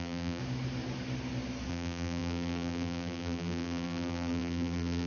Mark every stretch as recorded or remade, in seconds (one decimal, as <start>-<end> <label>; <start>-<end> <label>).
0.0-0.4 remade; 0.4-1.7 recorded; 1.7-5.1 remade